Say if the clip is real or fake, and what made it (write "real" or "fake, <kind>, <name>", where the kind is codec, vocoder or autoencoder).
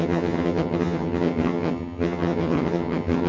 fake, vocoder, HiFi-GAN